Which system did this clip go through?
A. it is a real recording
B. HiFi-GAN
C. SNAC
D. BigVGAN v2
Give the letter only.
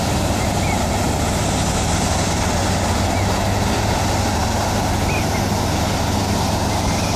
A